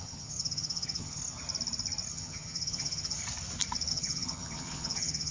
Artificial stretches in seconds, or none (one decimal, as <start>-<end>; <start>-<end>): 0.0-1.2; 2.1-3.2; 3.9-5.3

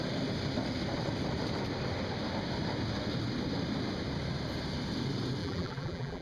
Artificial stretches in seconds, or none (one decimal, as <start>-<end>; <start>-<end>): 5.4-6.2

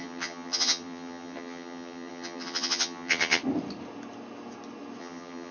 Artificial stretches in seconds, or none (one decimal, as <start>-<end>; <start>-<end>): 0.0-3.4; 5.0-5.5

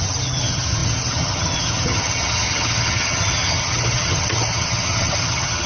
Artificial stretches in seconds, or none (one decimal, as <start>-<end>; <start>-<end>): 0.0-5.7

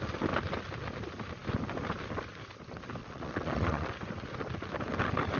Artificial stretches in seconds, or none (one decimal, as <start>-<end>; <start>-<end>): 3.0-3.9